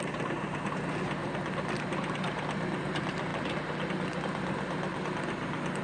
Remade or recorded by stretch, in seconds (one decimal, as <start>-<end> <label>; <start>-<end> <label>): 0.0-5.8 recorded